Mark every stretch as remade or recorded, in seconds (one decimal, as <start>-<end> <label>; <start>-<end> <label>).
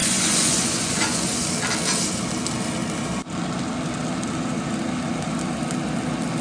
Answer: 0.0-1.4 remade; 1.4-6.4 recorded